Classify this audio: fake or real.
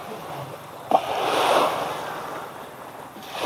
real